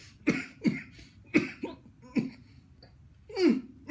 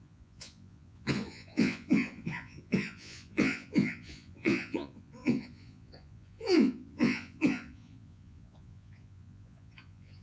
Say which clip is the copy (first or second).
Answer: second